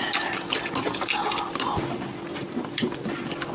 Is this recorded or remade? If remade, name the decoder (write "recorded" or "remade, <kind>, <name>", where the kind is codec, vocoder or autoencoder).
recorded